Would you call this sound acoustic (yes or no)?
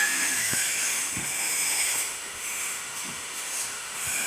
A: no